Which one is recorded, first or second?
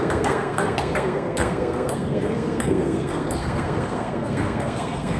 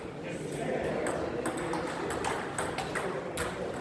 second